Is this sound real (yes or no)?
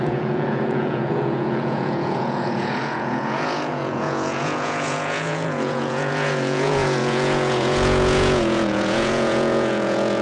no